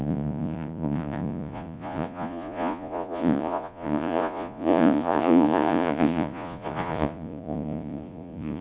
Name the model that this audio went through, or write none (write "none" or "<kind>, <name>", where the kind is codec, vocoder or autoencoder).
vocoder, Vocos